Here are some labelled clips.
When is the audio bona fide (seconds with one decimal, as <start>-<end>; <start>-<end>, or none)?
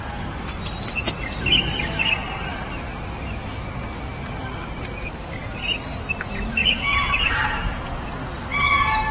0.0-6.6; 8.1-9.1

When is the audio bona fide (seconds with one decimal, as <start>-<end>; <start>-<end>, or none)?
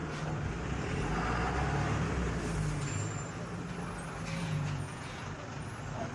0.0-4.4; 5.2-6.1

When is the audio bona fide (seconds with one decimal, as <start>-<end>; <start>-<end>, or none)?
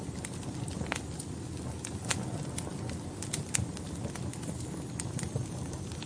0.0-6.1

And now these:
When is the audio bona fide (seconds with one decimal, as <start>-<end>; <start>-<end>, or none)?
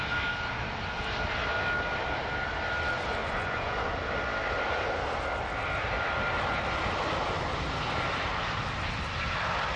0.0-3.2; 3.9-9.8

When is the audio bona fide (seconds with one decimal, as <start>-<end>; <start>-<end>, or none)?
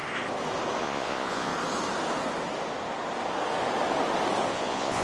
0.0-0.8; 1.5-4.5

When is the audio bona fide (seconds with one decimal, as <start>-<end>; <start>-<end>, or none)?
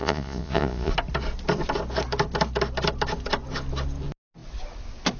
0.9-5.2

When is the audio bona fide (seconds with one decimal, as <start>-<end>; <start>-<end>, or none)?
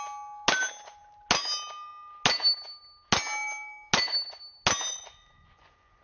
0.0-4.9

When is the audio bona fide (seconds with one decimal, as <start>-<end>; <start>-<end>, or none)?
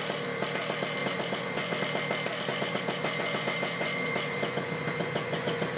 0.0-1.0; 1.8-2.5